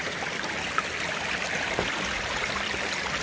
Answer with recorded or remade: recorded